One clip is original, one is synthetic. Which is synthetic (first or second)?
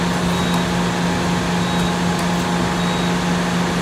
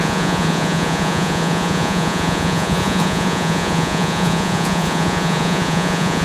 second